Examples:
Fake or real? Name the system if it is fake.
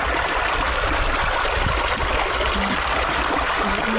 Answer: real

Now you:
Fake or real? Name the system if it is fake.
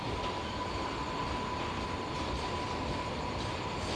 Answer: real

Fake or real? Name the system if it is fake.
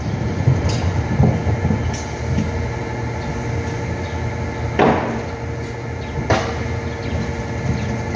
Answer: real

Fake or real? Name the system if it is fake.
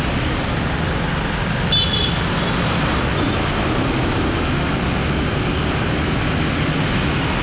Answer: real